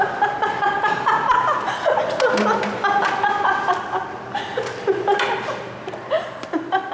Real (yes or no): yes